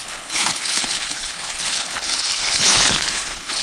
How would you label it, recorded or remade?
remade